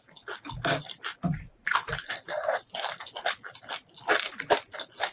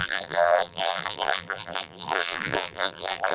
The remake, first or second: second